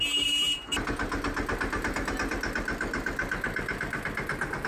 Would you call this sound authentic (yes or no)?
yes